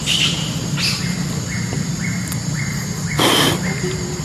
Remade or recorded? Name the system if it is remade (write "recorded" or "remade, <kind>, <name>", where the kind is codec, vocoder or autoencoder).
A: recorded